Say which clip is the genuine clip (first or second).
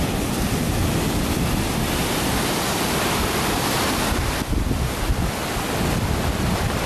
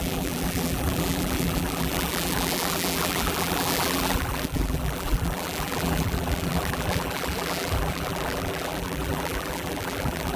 first